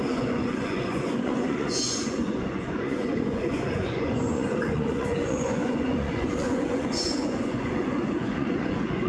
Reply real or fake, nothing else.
fake